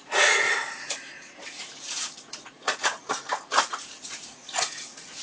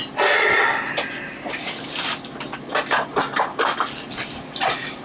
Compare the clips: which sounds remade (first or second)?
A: first